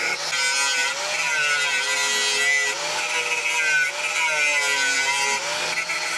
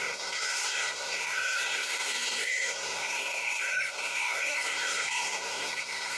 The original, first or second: first